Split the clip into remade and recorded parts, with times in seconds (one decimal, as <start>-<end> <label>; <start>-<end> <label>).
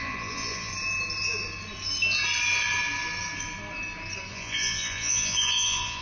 0.0-0.7 remade; 0.7-4.3 recorded; 4.3-6.0 remade